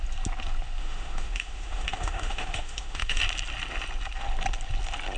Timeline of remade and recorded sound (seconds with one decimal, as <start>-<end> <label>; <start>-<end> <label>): 0.0-0.8 recorded; 0.8-3.2 remade; 3.2-5.2 recorded